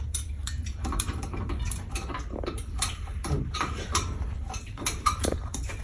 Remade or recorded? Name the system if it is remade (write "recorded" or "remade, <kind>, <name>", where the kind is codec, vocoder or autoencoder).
remade, vocoder, BigVGAN v2